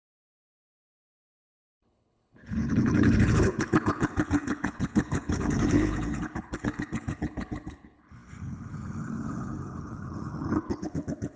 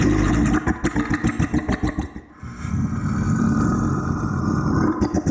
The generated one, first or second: first